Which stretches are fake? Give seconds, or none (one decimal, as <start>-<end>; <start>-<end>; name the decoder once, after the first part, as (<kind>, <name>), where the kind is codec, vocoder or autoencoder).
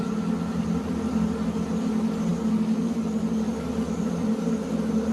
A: none